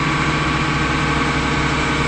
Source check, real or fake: real